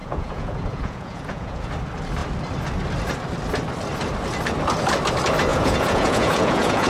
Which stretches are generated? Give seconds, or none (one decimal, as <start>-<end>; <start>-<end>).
0.0-1.7; 5.5-6.9